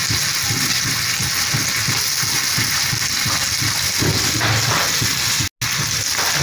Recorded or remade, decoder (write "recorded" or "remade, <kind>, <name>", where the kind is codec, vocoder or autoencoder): recorded